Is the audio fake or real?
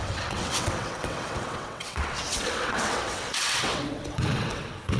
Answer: fake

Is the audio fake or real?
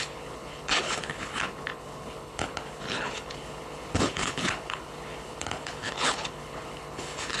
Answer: fake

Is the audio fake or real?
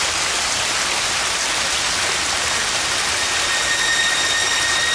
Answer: real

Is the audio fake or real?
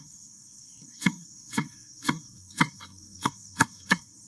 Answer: fake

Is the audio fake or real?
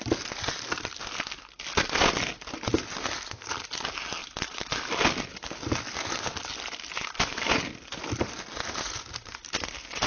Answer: real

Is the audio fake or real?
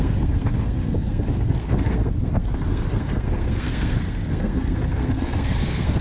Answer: fake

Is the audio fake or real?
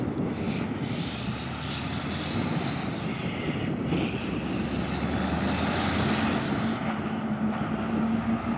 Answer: real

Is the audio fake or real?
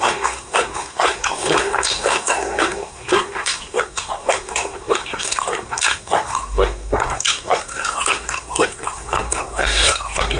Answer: fake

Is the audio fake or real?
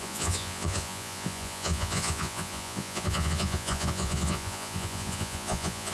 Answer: fake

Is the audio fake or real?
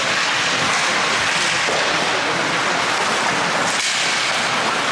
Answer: real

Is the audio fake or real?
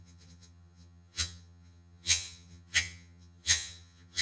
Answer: fake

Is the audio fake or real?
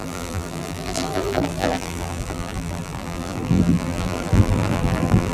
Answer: fake